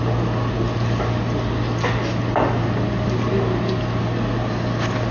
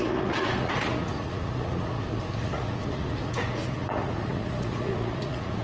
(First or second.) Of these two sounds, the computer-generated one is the second